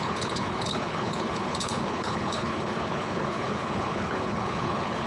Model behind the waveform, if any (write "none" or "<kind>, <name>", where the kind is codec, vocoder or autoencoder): codec, HILCodec